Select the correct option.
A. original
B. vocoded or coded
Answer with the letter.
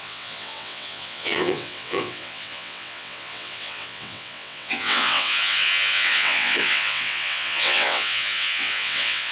B